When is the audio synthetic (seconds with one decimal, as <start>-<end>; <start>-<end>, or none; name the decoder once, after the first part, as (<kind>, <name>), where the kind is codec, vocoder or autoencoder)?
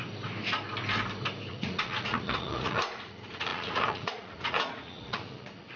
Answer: 1.5-5.8 (vocoder, Vocos)